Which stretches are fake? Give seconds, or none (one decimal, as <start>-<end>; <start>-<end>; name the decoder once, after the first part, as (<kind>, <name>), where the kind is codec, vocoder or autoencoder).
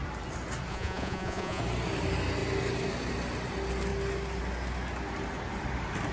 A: 0.7-1.6 (vocoder, Vocos)